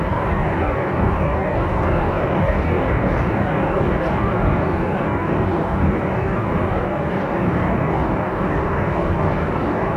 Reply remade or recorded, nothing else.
remade